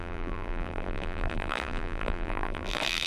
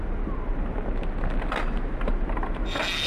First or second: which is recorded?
second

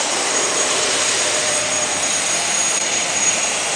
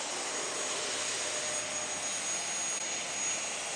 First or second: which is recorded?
second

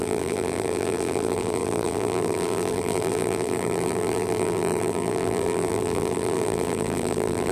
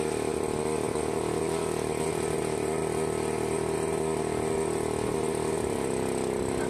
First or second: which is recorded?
second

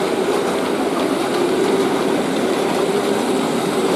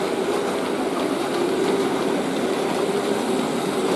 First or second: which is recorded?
second